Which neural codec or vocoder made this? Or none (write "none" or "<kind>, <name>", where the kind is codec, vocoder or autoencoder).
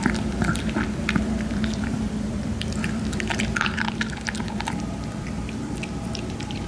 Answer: vocoder, BigVGAN v2